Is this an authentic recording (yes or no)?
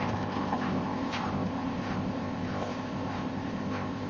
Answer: no